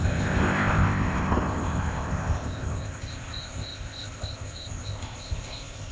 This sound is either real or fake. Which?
fake